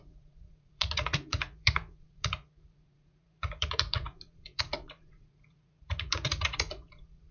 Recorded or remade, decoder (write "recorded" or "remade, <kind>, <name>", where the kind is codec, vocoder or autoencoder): remade, vocoder, Vocos